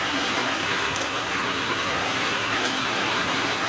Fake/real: fake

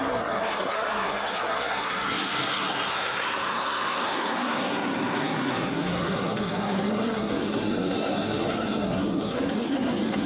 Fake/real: fake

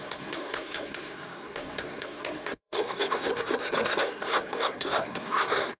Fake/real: fake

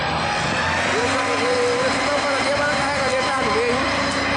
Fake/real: real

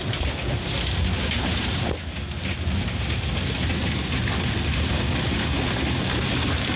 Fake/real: real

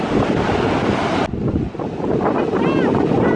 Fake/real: real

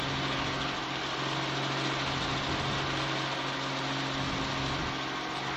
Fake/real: real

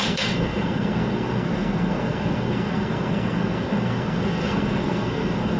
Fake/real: fake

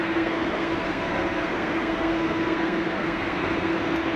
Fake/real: fake